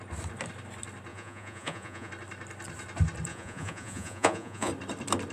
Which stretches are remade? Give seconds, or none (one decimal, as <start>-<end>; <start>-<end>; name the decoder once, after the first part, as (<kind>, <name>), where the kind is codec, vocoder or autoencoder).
1.1-2.1 (vocoder, Vocos); 3.3-4.7